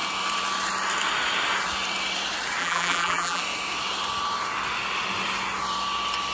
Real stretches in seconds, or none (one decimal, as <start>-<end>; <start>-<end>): 0.0-2.6; 3.4-6.3